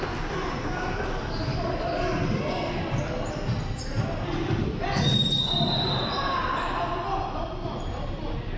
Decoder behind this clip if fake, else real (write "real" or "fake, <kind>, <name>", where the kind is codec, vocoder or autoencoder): real